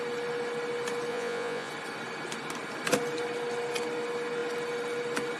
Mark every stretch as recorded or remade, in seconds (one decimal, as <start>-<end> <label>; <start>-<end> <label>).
0.0-1.1 recorded; 1.1-1.7 remade; 1.7-5.4 recorded